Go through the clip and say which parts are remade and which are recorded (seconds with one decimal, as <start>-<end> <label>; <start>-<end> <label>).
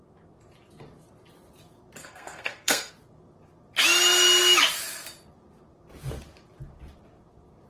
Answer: 0.0-2.0 recorded; 2.0-2.9 remade; 2.9-7.7 recorded